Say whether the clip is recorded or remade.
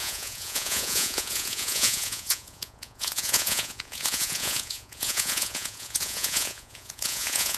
remade